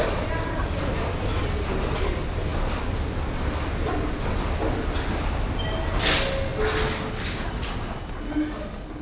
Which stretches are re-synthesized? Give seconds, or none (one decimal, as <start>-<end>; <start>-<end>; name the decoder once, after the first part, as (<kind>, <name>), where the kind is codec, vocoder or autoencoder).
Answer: none